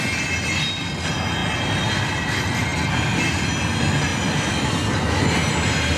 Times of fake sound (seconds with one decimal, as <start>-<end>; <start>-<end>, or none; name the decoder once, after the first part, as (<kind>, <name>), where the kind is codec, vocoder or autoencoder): none